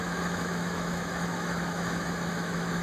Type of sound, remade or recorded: remade